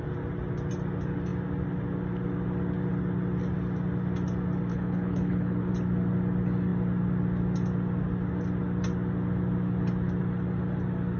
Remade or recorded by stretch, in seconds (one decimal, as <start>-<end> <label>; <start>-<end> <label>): 0.0-4.7 recorded; 4.7-5.7 remade; 5.7-11.2 recorded